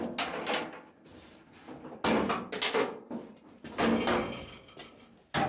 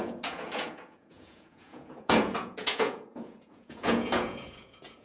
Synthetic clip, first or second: second